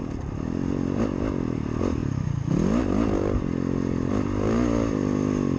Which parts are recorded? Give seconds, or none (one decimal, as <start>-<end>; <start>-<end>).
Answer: 0.0-5.6